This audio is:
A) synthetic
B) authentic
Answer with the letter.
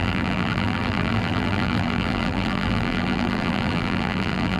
A